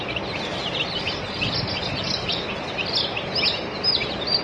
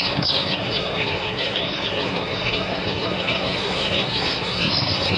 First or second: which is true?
first